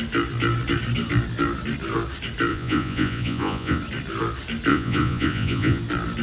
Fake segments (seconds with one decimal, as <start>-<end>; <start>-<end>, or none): 2.5-3.8; 4.7-5.8